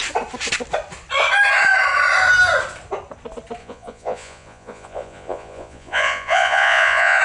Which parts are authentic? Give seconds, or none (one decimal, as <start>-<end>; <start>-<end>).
0.0-3.6